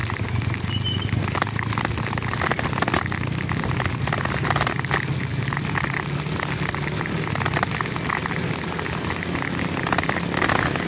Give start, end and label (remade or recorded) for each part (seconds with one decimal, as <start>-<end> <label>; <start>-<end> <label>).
0.0-10.9 recorded